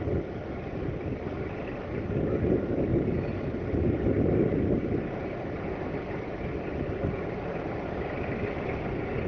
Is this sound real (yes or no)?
yes